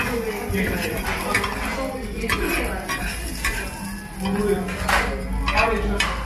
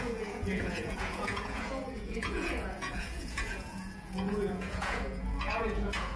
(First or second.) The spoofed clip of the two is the second